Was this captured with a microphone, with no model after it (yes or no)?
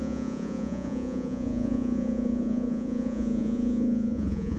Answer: no